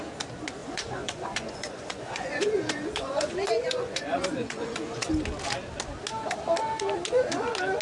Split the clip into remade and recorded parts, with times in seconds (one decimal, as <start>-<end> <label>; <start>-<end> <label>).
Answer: 0.0-0.6 recorded; 0.6-5.1 remade; 5.1-7.8 recorded